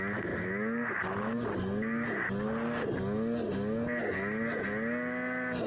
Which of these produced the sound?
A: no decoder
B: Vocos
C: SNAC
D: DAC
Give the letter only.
A